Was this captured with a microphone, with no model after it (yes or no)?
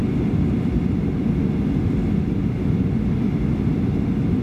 yes